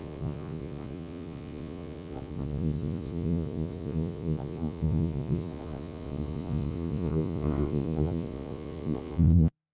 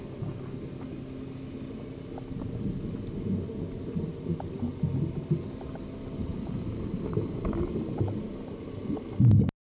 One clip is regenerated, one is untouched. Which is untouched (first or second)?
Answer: second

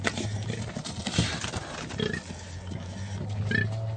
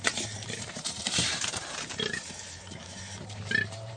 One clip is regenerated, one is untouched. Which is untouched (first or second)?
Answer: first